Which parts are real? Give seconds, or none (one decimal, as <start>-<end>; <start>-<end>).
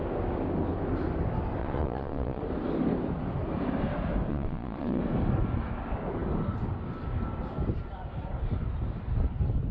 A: 0.0-1.6; 2.4-4.3; 5.0-9.7